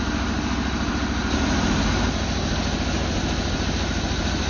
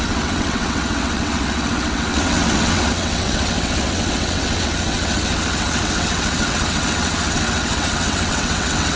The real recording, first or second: first